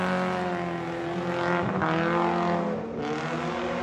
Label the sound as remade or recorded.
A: recorded